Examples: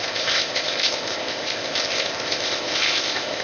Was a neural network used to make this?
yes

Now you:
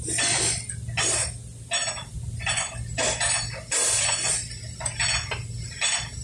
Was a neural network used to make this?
no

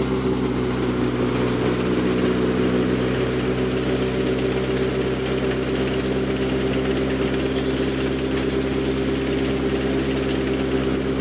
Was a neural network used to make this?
no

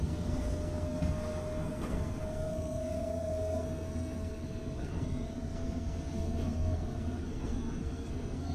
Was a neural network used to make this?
yes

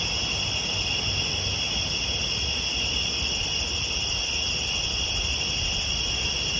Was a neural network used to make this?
no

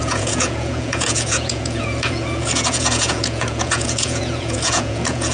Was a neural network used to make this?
yes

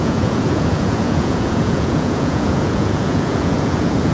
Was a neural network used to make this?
yes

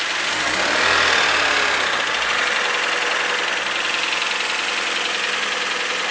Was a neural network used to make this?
no